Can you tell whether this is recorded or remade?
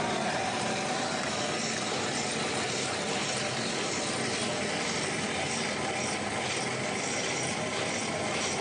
recorded